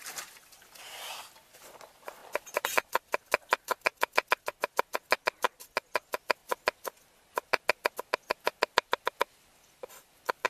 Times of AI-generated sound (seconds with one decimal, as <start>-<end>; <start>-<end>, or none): 2.2-2.9; 3.4-4.1